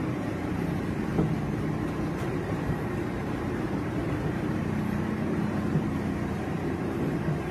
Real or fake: fake